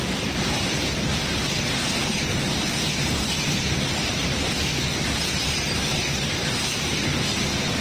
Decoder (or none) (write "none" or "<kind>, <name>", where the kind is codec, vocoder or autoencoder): none